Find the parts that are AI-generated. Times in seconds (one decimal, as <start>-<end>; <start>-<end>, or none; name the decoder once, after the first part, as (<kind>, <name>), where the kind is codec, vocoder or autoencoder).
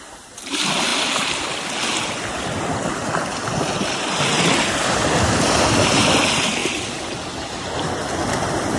none